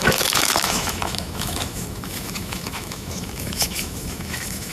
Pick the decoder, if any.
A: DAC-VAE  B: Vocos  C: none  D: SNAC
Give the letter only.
A